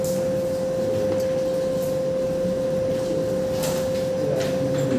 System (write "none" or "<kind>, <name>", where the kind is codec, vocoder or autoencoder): none